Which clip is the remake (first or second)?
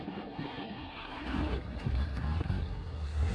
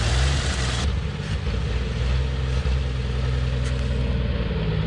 first